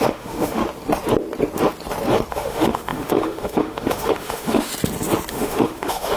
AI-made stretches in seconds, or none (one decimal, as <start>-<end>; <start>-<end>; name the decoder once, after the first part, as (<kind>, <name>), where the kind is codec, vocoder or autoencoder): 0.0-0.6 (autoencoder, DAC-VAE); 2.3-4.7; 5.3-6.2